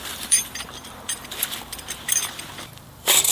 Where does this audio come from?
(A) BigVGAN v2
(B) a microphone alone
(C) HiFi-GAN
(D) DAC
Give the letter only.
A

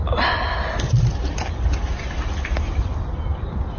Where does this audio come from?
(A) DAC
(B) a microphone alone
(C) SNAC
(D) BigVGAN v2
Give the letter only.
B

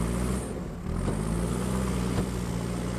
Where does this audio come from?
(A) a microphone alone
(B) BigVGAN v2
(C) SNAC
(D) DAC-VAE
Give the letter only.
A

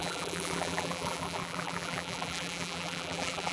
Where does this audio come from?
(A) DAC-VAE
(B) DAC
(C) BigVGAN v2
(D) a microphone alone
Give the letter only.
C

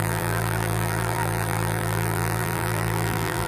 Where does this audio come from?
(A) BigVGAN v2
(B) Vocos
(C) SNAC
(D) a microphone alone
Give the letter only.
A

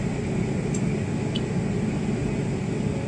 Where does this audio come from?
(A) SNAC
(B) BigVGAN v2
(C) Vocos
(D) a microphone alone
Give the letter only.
D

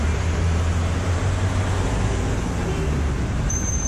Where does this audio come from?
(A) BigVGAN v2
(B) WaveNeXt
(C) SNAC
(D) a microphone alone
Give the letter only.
A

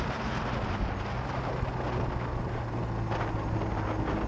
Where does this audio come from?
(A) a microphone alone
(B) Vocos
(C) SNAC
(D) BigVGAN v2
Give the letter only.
A